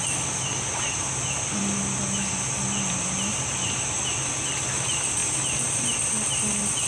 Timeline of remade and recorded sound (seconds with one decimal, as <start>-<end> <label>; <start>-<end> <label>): 0.0-6.9 recorded